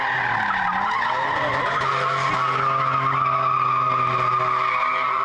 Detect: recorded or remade recorded